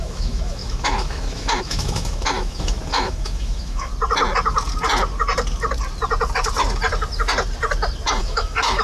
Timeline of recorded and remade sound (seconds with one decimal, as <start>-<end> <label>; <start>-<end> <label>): 0.0-3.9 remade; 3.9-8.2 recorded; 8.2-8.8 remade